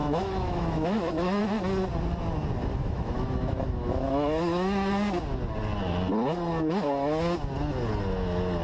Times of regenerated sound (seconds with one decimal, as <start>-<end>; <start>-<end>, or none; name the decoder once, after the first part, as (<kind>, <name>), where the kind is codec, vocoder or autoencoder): 0.0-1.4 (autoencoder, DAC-VAE); 2.7-4.9